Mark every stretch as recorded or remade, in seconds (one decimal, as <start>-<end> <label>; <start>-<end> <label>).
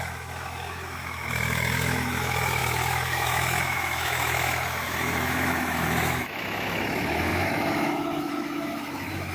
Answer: 0.0-9.3 remade